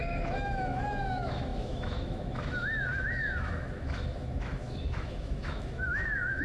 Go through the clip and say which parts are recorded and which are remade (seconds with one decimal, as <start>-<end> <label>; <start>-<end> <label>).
0.0-6.4 remade